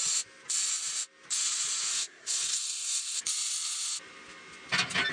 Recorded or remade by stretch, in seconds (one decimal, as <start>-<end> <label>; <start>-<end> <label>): 0.0-1.9 recorded; 1.9-3.2 remade; 3.2-5.1 recorded